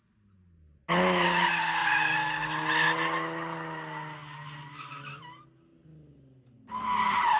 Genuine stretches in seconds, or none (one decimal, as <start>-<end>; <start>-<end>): 0.0-7.4